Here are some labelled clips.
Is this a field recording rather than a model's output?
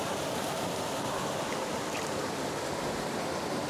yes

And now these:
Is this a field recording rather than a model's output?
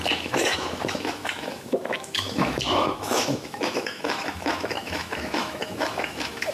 no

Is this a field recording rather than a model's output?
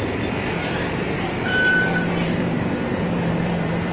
no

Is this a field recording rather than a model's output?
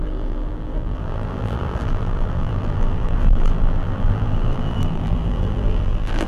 no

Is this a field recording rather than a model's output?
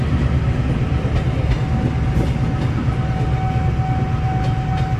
yes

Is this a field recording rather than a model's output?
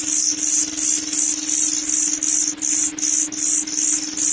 yes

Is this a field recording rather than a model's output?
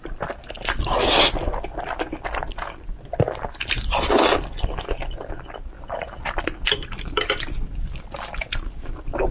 yes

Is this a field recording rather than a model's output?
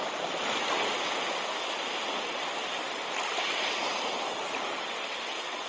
yes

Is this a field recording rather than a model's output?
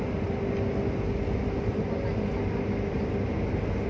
yes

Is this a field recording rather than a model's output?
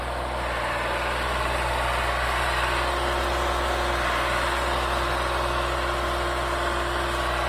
yes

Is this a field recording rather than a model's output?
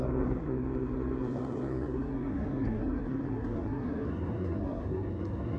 no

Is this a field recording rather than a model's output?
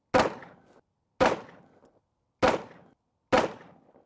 yes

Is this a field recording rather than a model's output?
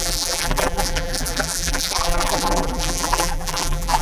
no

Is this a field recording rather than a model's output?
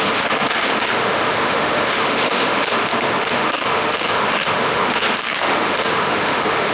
no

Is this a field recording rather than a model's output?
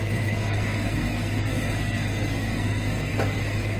no